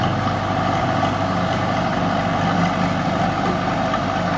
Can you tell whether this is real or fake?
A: real